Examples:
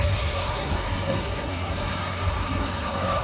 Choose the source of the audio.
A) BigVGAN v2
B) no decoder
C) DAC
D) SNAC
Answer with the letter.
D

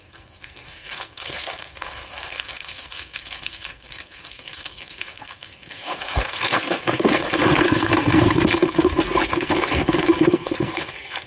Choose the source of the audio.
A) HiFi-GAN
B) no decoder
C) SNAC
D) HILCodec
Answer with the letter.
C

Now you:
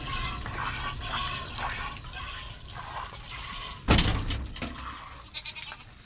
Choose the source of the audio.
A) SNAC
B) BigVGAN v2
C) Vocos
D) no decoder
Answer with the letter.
D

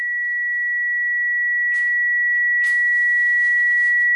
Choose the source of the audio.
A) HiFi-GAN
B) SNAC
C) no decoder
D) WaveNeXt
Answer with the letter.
C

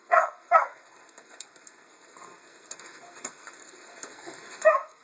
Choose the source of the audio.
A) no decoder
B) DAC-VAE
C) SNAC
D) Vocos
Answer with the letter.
C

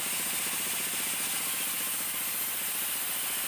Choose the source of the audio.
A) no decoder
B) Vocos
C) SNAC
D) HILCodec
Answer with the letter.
A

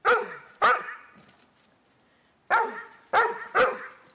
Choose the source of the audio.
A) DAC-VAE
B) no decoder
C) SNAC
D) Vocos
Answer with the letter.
B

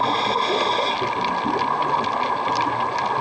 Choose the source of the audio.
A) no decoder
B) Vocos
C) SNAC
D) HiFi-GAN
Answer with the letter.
A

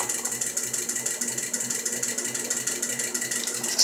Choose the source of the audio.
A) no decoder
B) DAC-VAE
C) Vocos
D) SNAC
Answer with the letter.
A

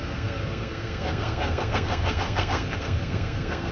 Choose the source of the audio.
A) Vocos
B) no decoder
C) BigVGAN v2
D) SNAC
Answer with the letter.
D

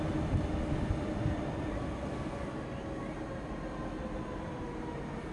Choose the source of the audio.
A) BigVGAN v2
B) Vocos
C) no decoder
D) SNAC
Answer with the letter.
C